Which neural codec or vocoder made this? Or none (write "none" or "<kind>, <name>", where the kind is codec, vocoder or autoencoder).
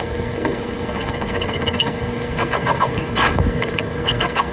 codec, SNAC